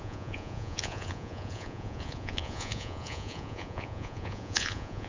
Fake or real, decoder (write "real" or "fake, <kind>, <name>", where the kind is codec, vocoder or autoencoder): fake, vocoder, Vocos